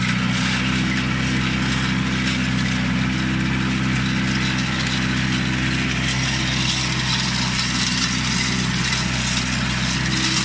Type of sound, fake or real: real